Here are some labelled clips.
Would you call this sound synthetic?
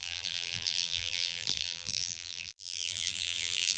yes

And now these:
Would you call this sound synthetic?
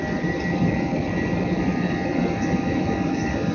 no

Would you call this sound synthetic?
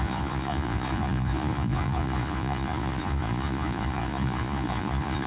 yes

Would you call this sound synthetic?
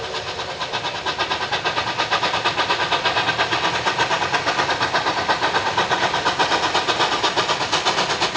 no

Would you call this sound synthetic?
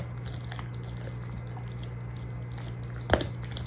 no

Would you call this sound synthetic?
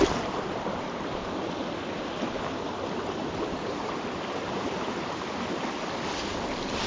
no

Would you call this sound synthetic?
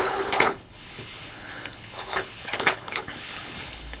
yes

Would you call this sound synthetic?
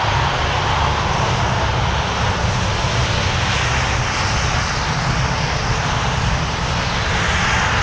no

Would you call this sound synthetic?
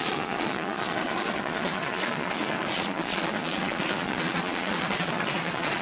yes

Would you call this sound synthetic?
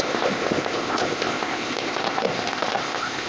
yes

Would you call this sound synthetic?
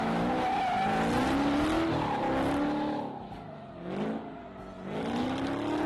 no